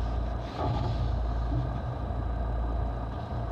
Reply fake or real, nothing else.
real